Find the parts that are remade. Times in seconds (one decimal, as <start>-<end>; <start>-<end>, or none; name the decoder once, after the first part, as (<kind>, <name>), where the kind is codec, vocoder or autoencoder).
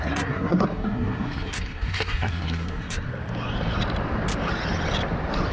0.0-3.1 (codec, SNAC)